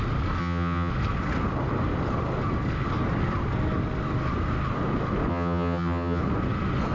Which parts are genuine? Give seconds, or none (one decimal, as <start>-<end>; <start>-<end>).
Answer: 0.0-0.4; 0.9-5.3; 6.2-6.9